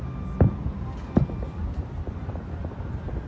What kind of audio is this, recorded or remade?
recorded